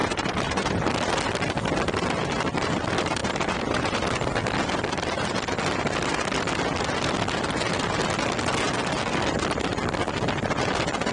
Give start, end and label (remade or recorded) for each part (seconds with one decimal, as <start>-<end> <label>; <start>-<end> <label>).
0.0-0.9 remade; 0.9-3.2 recorded; 3.2-4.0 remade; 4.0-11.1 recorded